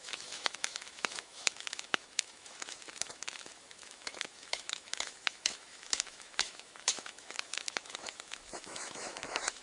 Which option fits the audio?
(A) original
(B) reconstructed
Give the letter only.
B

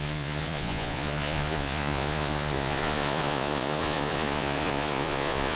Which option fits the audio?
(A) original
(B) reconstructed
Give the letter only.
B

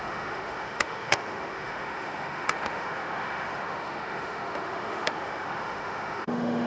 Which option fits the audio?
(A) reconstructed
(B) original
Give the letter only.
A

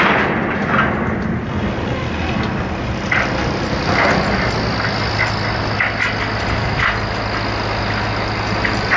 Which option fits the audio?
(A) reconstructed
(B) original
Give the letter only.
B